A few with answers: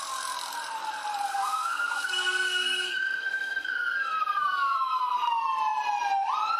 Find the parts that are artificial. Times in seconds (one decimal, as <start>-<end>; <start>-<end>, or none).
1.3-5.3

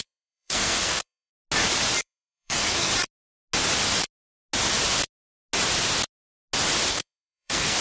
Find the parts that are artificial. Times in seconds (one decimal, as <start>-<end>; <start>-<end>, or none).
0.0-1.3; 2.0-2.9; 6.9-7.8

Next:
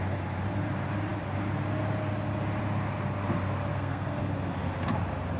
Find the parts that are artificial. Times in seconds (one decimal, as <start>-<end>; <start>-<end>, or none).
3.7-4.2

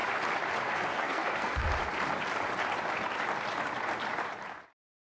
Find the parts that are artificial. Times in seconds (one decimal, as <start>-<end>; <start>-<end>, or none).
0.6-1.7

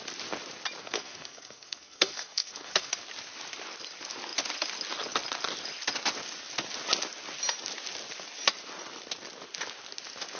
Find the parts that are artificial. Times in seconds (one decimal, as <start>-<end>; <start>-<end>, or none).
0.8-2.9

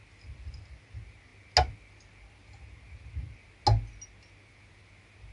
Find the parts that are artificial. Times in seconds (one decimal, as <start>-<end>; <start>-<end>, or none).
none

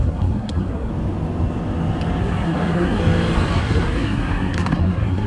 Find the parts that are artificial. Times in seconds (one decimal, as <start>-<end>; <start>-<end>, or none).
0.0-0.9; 2.2-3.0; 3.6-5.3

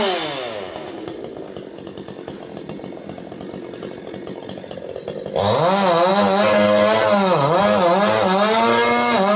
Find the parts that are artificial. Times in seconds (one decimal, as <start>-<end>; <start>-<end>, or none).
none